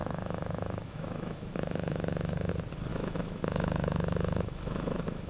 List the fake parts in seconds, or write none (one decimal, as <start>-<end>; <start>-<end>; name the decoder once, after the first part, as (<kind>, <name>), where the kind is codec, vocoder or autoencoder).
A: 0.0-2.5 (autoencoder, DAC-VAE); 2.9-5.3

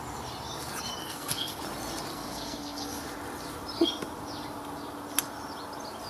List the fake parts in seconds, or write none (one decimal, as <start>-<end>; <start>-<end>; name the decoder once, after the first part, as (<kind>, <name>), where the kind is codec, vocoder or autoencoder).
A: 1.0-1.6 (codec, SNAC); 2.1-3.0

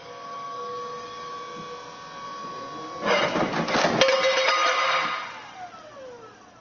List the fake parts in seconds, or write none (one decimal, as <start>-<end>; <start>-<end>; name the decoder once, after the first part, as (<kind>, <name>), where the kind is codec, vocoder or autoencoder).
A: 0.0-1.3 (codec, DAC)

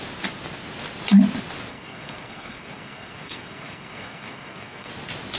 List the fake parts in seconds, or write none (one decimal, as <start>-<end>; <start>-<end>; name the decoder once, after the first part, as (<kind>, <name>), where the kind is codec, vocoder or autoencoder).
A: 1.7-4.9 (codec, SNAC)

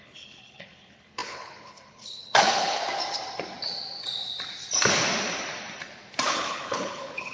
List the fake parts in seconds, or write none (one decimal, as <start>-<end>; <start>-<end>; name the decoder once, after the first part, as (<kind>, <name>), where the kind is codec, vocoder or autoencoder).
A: 0.0-2.8 (codec, HILCodec); 6.3-7.3

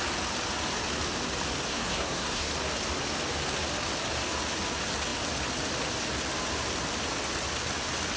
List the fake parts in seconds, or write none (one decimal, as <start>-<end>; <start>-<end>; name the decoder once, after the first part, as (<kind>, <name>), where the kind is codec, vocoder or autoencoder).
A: 1.7-2.5 (codec, SNAC)

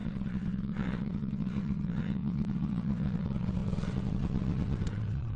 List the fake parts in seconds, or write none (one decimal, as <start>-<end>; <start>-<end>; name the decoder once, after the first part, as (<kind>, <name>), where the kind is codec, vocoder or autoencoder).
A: 0.0-5.4 (vocoder, WaveNeXt)